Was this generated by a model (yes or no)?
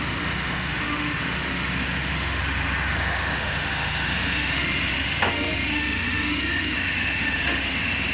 yes